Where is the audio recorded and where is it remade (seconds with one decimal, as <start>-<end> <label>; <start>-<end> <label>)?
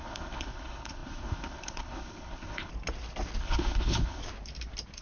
0.0-2.7 remade; 2.7-3.4 recorded; 3.4-4.2 remade; 4.2-5.0 recorded